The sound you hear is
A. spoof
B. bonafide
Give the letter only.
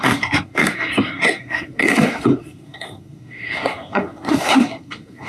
A